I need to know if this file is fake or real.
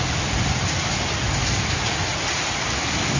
fake